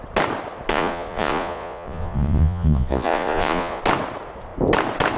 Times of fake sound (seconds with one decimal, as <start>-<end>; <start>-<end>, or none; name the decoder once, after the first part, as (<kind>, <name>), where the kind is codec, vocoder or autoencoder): 0.7-3.8 (vocoder, Vocos)